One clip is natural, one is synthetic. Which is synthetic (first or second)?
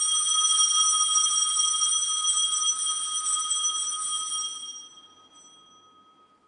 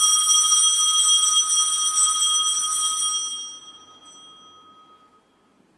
first